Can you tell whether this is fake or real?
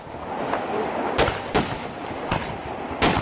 real